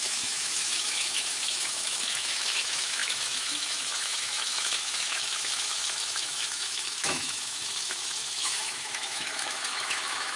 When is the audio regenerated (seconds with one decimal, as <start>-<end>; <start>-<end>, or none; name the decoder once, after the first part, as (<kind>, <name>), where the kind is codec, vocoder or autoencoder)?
0.0-10.4 (autoencoder, DAC-VAE)